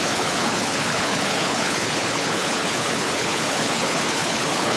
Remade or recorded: remade